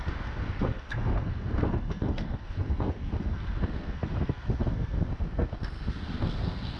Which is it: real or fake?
fake